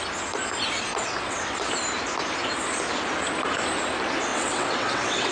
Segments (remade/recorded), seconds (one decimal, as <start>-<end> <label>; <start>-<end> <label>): 0.0-0.9 recorded; 0.9-1.7 remade; 1.7-4.3 recorded; 4.3-5.3 remade